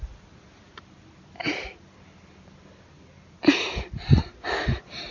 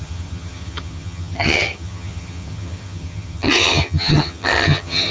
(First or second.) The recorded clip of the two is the first